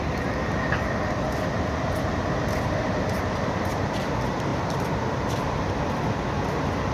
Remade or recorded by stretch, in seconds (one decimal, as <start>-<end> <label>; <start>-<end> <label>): 0.0-4.5 recorded; 4.5-6.2 remade; 6.2-6.9 recorded